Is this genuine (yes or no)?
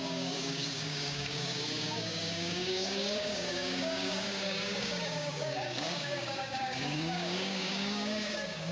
no